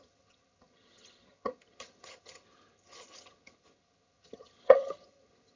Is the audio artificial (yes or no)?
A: yes